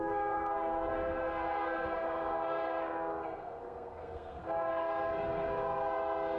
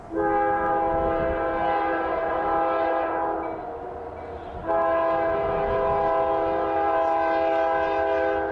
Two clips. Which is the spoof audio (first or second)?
first